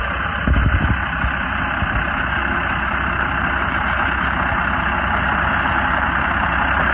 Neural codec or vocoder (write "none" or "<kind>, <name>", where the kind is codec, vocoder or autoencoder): none